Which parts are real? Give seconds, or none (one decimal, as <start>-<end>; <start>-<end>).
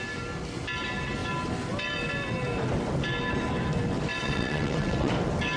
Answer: 0.0-4.1; 5.1-5.6